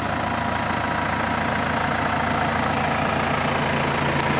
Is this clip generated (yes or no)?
no